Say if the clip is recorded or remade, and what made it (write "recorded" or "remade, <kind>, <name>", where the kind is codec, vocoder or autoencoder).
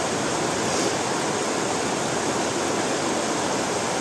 recorded